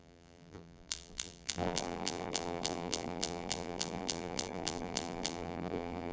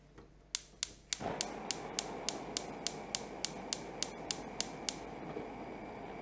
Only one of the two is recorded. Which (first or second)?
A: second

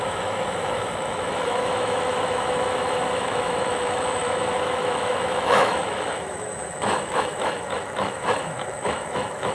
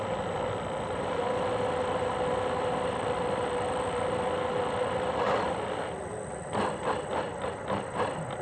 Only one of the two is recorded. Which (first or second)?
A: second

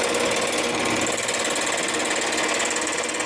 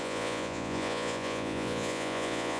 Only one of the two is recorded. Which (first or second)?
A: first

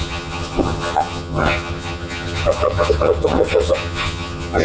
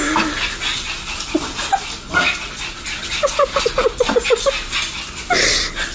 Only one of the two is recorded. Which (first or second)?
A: second